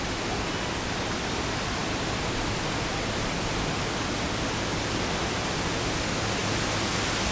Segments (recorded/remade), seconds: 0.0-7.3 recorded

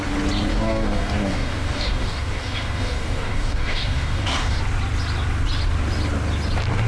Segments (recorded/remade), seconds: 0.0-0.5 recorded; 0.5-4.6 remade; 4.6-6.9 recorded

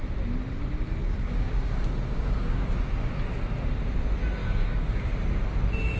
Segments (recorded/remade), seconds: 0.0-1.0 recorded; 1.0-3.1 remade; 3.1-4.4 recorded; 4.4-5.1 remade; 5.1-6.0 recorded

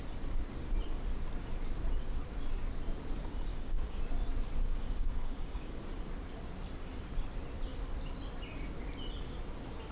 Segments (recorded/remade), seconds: 0.0-3.5 recorded; 3.5-4.0 remade; 4.0-4.6 recorded; 4.6-5.7 remade; 5.7-9.9 recorded

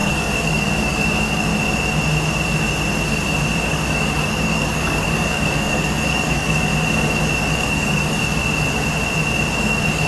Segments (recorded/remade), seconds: 0.0-1.5 remade; 1.5-3.6 recorded; 3.6-6.7 remade; 6.7-7.4 recorded; 7.4-8.4 remade; 8.4-9.6 recorded; 9.6-10.1 remade